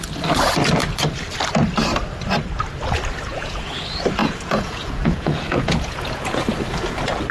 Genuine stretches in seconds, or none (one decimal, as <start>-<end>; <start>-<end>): 0.0-3.3; 3.8-4.2; 6.4-7.3